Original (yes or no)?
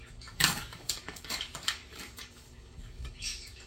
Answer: no